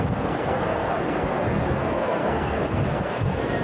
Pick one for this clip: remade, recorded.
remade